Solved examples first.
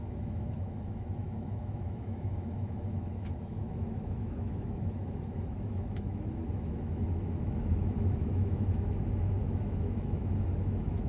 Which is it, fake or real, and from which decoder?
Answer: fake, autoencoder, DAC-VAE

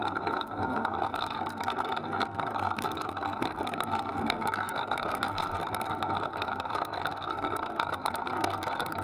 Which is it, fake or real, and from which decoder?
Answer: fake, codec, SNAC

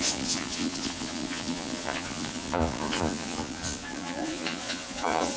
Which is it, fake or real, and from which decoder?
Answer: fake, vocoder, Vocos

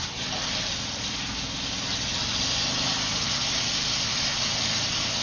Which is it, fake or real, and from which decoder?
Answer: real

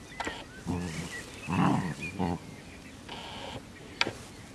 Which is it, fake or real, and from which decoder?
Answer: real